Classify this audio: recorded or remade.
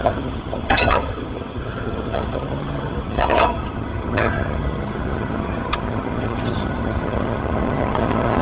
remade